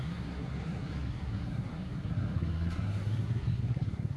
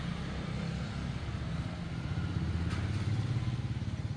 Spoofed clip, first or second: first